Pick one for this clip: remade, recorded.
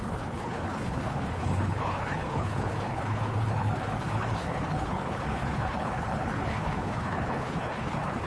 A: remade